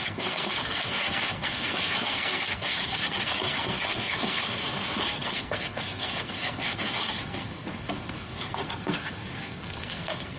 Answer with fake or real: fake